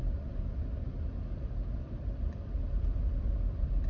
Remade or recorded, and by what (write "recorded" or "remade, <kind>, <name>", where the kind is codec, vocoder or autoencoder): remade, vocoder, BigVGAN v2